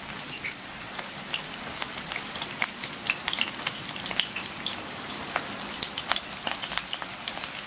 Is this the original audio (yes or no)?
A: yes